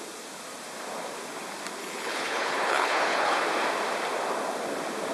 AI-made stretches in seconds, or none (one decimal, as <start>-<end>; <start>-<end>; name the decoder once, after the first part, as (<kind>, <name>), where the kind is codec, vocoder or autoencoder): 1.8-3.4 (codec, HILCodec)